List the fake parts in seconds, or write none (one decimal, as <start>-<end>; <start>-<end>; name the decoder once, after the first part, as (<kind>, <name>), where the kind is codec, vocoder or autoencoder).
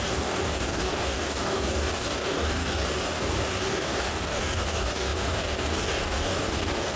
0.0-7.0 (codec, DAC)